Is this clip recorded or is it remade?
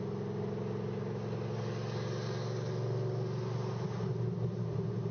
recorded